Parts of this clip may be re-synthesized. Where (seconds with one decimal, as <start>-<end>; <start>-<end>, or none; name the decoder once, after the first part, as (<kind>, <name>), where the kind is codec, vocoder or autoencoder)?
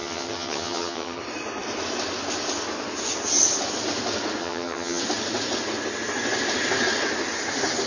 0.0-1.2 (vocoder, HiFi-GAN); 4.4-5.0